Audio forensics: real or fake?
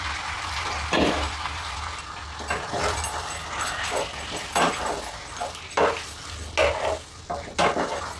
real